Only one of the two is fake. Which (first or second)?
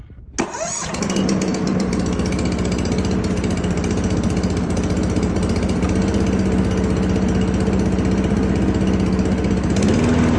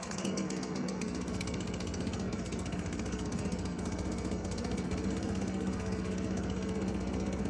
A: second